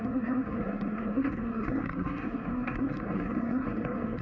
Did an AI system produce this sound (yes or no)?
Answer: yes